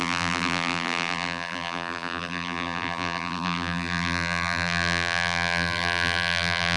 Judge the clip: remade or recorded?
remade